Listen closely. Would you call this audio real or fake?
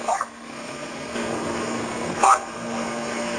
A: fake